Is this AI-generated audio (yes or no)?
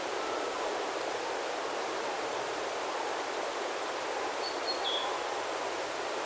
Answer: no